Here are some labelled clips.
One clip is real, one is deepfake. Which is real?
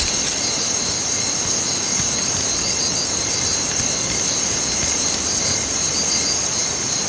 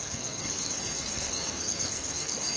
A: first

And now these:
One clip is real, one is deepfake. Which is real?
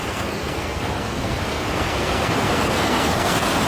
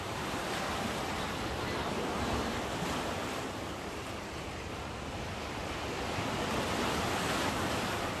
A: second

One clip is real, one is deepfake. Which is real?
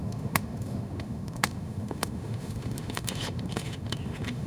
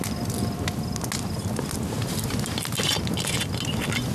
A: second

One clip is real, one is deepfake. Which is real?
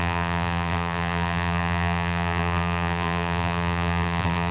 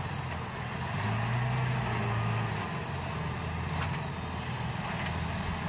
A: second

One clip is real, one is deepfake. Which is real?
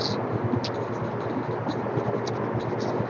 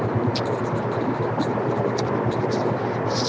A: first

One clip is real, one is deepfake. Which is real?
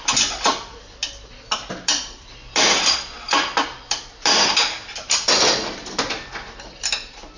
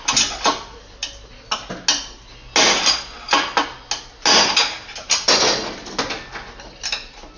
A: second